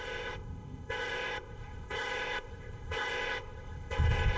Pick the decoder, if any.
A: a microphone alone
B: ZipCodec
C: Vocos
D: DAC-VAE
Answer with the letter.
B